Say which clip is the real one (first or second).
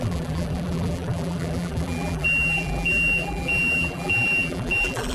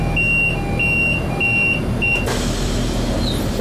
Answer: second